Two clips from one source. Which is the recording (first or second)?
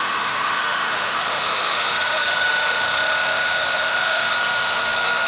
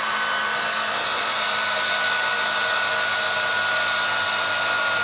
second